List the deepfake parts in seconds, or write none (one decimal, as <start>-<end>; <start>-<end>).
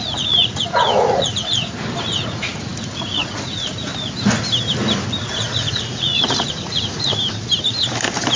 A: 0.0-1.5; 2.3-3.9; 5.2-7.1